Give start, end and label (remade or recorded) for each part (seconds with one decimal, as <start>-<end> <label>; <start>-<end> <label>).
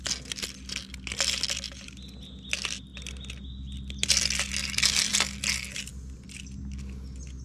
0.0-7.4 recorded